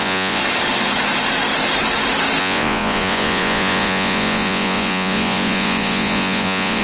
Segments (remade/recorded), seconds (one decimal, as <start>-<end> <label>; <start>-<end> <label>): 0.0-0.4 remade; 0.4-2.4 recorded; 2.4-6.8 remade